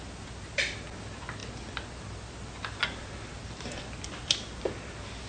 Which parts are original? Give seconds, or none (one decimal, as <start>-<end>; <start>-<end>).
0.0-5.3